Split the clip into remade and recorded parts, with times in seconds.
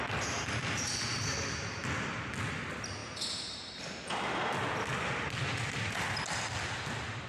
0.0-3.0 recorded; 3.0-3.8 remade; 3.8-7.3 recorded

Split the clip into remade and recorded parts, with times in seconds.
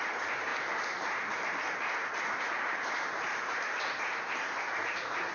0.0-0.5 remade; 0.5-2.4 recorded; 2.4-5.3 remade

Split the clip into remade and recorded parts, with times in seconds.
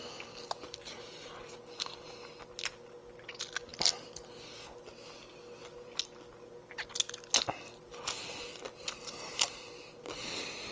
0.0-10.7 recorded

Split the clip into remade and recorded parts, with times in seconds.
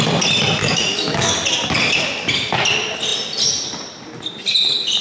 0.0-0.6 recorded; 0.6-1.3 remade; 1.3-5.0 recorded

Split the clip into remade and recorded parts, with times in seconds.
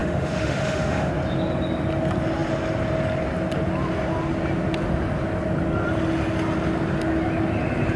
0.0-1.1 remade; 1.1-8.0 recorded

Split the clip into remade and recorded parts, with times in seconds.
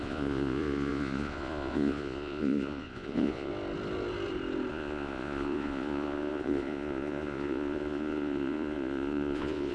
0.0-3.5 remade; 3.5-4.7 recorded; 4.7-9.7 remade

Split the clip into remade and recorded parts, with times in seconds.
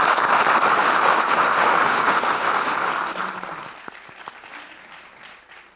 0.0-0.7 recorded; 0.7-2.9 remade; 2.9-5.8 recorded